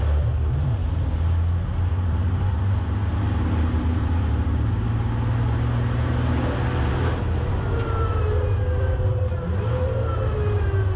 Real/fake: real